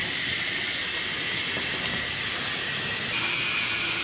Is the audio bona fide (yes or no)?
yes